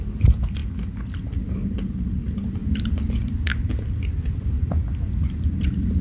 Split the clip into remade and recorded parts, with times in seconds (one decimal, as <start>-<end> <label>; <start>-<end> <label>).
0.0-2.6 recorded; 2.6-3.4 remade; 3.4-6.0 recorded